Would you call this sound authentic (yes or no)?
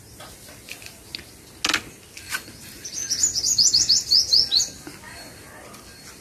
yes